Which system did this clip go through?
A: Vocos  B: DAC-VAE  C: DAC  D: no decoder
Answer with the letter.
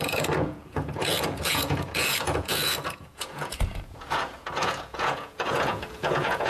A